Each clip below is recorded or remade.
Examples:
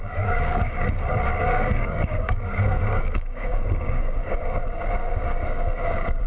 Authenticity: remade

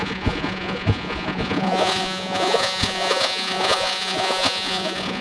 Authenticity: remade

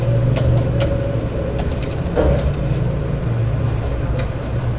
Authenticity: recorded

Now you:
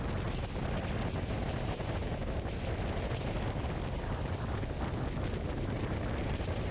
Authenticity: recorded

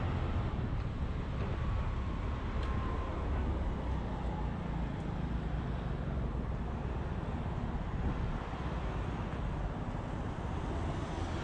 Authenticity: recorded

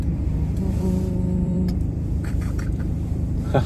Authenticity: remade